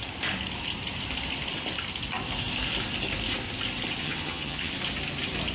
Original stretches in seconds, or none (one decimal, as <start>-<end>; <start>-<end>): 0.0-4.0; 4.7-5.5